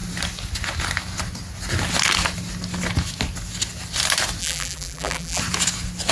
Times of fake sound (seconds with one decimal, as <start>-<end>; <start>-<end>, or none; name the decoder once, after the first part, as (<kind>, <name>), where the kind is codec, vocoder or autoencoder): 4.4-5.4 (vocoder, BigVGAN v2)